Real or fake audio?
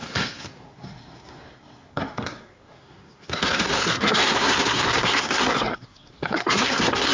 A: fake